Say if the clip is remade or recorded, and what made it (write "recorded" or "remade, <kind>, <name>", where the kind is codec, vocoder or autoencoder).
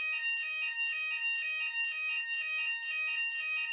recorded